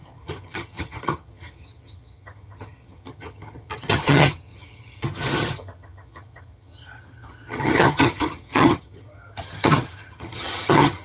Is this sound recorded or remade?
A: remade